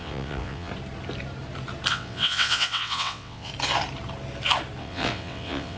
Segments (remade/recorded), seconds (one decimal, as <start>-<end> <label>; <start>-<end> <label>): 0.0-0.7 remade; 0.7-1.9 recorded; 1.9-3.5 remade; 3.5-4.8 recorded; 4.8-5.8 remade